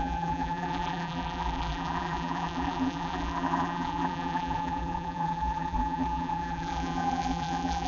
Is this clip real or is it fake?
fake